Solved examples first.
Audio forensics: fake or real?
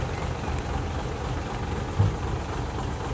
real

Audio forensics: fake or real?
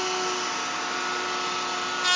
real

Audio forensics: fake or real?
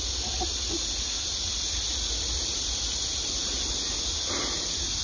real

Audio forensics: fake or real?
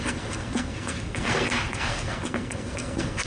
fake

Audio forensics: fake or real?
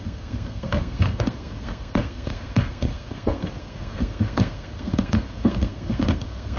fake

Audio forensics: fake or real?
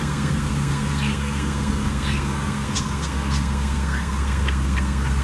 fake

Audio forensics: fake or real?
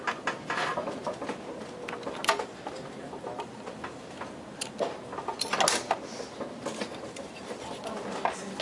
real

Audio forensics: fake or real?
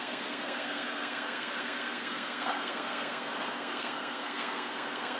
fake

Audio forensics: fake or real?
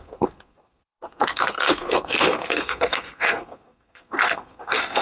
fake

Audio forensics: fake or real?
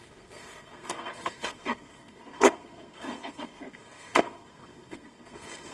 fake